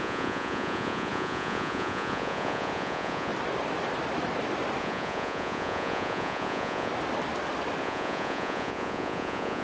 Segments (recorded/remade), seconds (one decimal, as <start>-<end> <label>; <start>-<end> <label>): 0.0-3.3 remade; 3.3-4.8 recorded; 4.8-6.9 remade; 6.9-7.8 recorded; 7.8-9.6 remade